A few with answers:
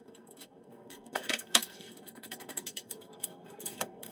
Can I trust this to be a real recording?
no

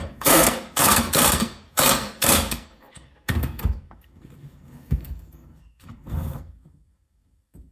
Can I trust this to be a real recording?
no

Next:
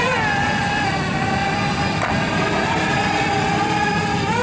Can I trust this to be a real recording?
yes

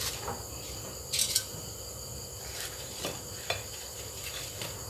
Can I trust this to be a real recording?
yes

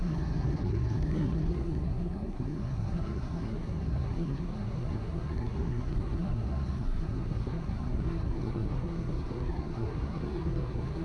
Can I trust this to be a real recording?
no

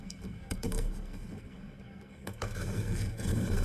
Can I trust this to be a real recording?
no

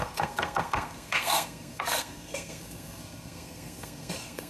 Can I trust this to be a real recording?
no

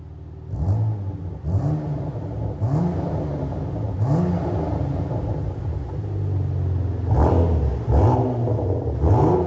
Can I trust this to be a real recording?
yes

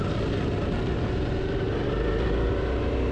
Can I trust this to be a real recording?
yes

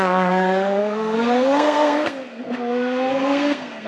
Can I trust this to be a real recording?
no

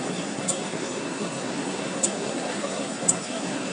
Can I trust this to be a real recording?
no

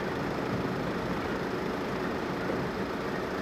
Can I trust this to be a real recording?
yes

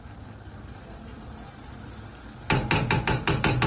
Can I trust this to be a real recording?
yes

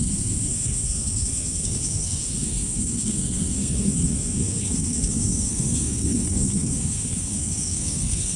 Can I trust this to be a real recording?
no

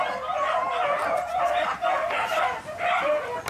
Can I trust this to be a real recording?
yes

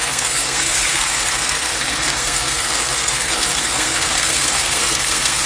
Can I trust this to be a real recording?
no